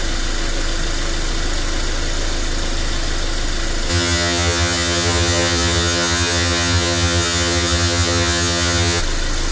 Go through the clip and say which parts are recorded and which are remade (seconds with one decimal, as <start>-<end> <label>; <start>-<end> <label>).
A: 0.0-3.9 recorded; 3.9-9.0 remade; 9.0-9.5 recorded